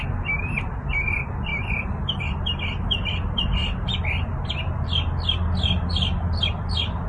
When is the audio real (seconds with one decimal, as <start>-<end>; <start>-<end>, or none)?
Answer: 0.0-7.1